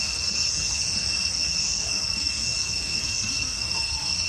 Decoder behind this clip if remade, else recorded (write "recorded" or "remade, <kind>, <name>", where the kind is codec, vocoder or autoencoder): remade, codec, SNAC